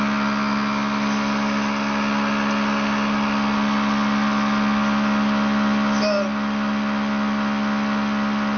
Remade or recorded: recorded